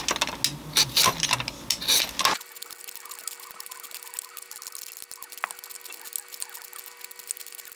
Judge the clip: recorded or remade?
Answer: recorded